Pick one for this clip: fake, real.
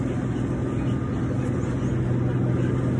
real